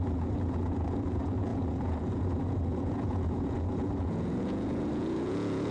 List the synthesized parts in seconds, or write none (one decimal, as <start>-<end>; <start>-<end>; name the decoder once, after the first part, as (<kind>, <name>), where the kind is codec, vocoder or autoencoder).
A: 0.0-5.7 (vocoder, Vocos)